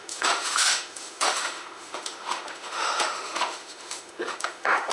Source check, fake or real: fake